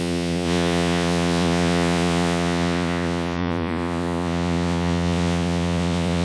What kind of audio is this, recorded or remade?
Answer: remade